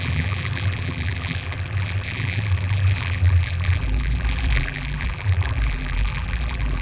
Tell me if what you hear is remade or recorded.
remade